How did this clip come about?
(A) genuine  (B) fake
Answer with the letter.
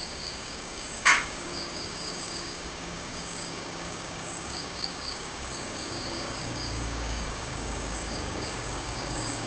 B